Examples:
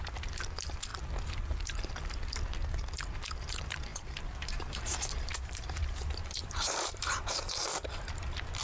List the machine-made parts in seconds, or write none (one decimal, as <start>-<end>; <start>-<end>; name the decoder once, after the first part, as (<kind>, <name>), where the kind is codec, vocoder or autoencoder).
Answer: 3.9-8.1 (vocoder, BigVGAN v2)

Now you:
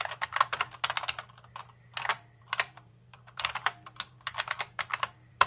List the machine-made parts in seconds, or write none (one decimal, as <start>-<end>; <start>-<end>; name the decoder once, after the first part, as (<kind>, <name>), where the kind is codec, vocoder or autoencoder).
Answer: 2.1-5.5 (vocoder, BigVGAN v2)

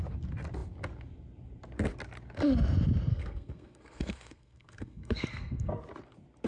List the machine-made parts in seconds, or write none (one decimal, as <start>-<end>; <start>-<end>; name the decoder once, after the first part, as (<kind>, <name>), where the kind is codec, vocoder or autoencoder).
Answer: 3.1-5.7 (codec, SNAC)

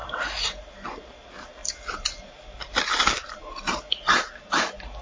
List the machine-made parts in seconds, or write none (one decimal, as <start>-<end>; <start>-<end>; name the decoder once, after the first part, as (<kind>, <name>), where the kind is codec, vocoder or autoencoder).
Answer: 0.0-0.6 (vocoder, BigVGAN v2); 1.6-4.2